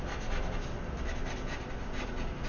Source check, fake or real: real